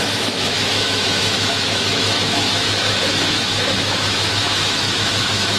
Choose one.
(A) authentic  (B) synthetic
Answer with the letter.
B